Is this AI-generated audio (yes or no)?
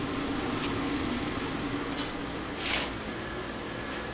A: no